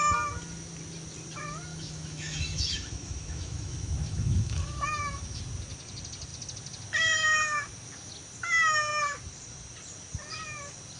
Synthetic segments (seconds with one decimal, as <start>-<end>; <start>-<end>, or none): 1.7-5.4